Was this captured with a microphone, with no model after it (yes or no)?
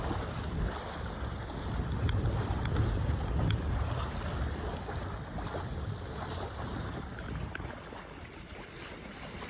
yes